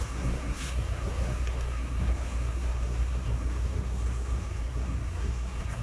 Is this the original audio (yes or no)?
no